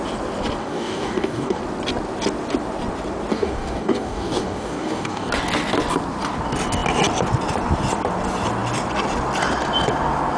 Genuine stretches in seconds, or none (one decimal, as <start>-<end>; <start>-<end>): 0.0-0.6; 1.6-3.3; 5.3-10.4